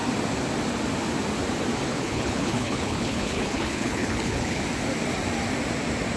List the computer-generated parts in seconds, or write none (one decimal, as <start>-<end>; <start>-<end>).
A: 1.9-4.6